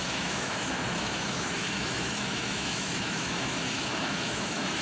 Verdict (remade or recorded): remade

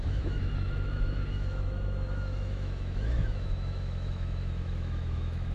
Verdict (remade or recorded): remade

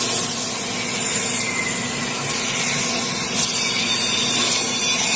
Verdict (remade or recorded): recorded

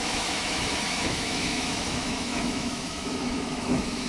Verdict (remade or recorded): remade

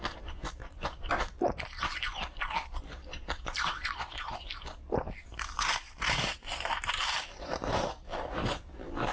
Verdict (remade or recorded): remade